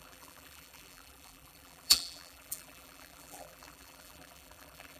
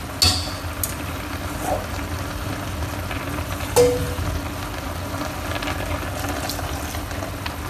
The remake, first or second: first